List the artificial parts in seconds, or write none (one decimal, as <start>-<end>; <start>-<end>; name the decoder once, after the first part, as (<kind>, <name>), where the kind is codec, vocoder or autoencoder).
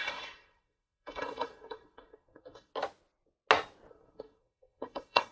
0.0-2.7 (codec, SNAC); 3.9-5.3